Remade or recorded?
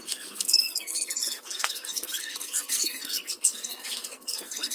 remade